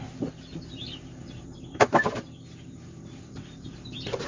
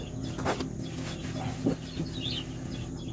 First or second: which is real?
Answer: second